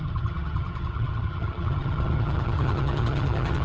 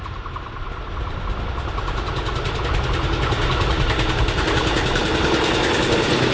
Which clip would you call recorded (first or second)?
second